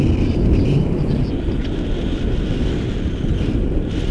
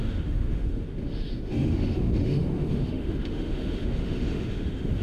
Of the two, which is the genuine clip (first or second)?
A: first